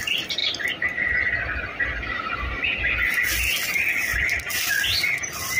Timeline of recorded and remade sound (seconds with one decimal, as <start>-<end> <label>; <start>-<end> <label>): 0.0-0.4 recorded; 0.4-1.1 remade; 1.1-2.0 recorded; 2.0-2.9 remade; 2.9-5.6 recorded